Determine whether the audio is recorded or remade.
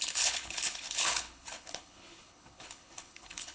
remade